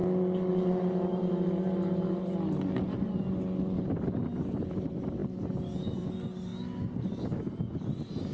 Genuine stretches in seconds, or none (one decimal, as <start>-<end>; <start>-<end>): 0.0-8.3